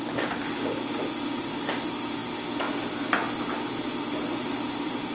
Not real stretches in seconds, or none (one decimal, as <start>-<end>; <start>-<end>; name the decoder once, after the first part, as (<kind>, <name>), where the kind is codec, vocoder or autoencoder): none